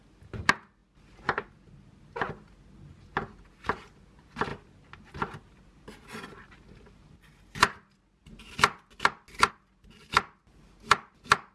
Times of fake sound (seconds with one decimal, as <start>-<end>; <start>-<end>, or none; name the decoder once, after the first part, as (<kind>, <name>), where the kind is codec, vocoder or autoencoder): none